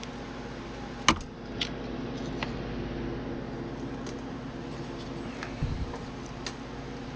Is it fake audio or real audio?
real